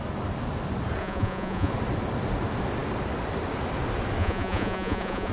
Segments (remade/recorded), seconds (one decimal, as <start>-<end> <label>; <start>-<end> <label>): 0.0-1.0 recorded; 1.0-1.7 remade; 1.7-4.2 recorded; 4.2-5.3 remade